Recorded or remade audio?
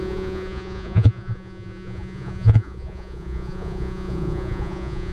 remade